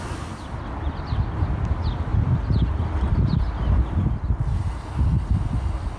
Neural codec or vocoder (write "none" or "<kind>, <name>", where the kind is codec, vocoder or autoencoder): none